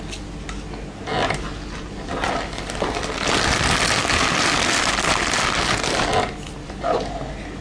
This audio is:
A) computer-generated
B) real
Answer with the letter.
B